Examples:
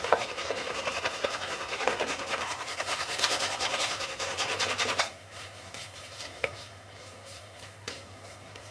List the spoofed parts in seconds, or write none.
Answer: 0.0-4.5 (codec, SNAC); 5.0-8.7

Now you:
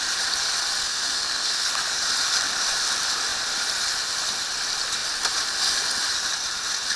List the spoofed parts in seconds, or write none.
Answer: 0.8-1.7 (codec, SNAC)

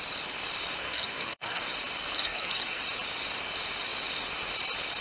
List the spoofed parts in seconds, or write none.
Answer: 0.8-1.6 (codec, SNAC); 2.1-2.8

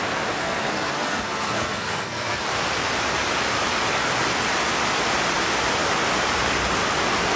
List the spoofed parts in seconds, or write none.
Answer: 0.4-2.4 (codec, SNAC)

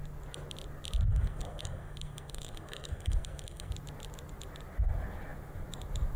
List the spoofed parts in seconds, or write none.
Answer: 1.1-3.7 (codec, SNAC)